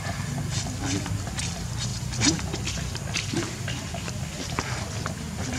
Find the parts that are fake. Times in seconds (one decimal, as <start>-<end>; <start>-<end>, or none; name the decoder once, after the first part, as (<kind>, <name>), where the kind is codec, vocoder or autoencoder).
0.0-5.6 (vocoder, BigVGAN v2)